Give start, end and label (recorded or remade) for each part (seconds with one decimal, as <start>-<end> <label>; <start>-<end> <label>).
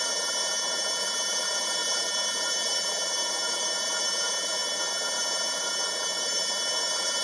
0.0-7.2 remade